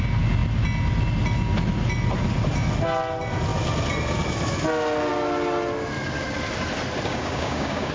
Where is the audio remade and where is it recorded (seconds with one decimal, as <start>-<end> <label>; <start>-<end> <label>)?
0.0-7.1 recorded; 7.1-7.9 remade